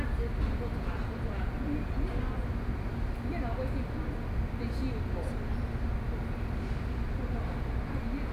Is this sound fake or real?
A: real